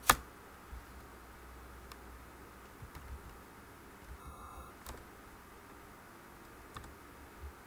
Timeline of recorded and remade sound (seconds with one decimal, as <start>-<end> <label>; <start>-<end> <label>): 0.0-4.2 recorded; 4.2-4.7 remade; 4.7-7.7 recorded